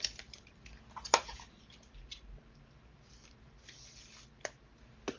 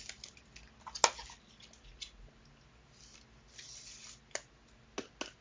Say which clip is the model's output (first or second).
first